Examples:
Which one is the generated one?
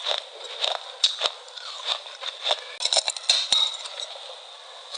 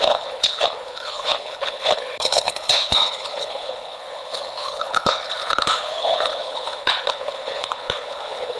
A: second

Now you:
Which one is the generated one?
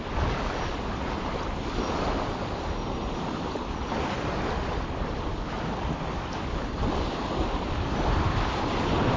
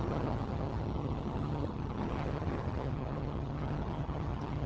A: second